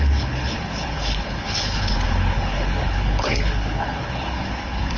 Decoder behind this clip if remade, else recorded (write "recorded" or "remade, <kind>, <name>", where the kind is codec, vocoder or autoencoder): remade, codec, HILCodec